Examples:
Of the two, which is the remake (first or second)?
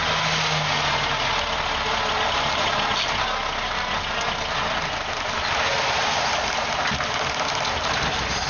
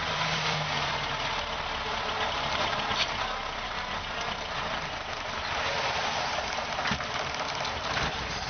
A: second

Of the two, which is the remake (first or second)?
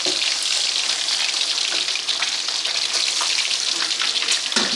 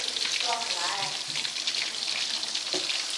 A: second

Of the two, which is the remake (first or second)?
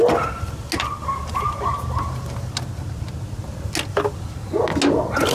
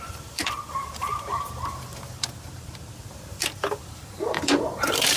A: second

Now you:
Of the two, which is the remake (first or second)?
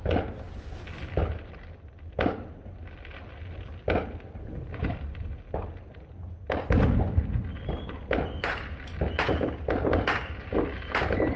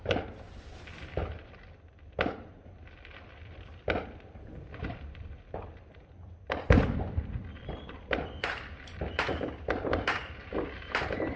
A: second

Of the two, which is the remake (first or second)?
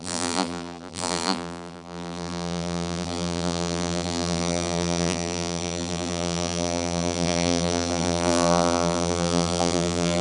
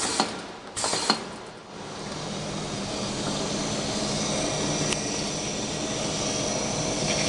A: first